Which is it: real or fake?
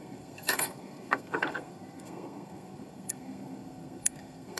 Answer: fake